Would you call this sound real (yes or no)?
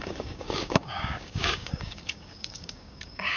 no